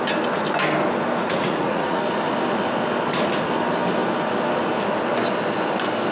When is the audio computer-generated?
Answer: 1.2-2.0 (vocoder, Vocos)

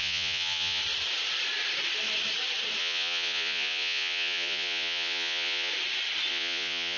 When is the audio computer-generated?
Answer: 0.0-0.8 (vocoder, Vocos); 2.8-5.7; 6.3-7.0

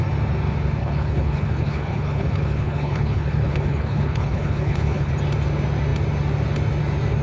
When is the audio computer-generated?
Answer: 0.8-5.1 (codec, HILCodec)

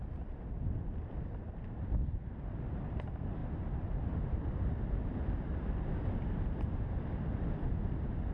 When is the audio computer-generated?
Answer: none

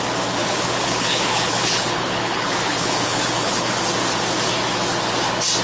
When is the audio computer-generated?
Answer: 0.4-3.8 (codec, HILCodec)

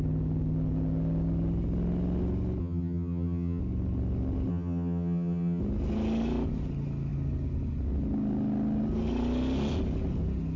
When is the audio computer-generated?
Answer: 2.6-3.6 (vocoder, HiFi-GAN); 4.5-5.6

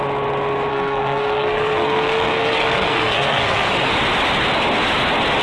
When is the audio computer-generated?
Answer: 0.7-3.9 (codec, SNAC)

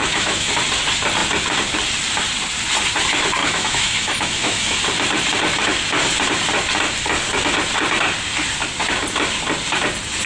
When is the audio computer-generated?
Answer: 0.0-0.5 (autoencoder, DAC-VAE); 3.4-4.8